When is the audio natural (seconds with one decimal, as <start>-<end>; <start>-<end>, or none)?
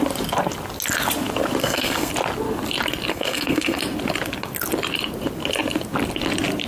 0.0-1.6; 2.1-3.1; 3.8-6.7